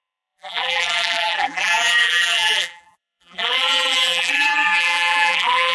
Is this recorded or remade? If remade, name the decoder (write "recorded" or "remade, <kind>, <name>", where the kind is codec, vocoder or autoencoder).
remade, vocoder, BigVGAN v2